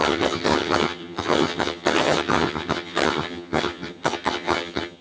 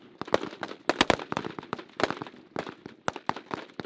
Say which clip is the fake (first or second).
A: first